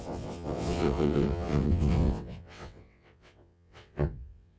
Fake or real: fake